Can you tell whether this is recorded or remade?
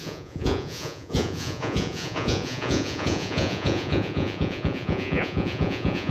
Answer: remade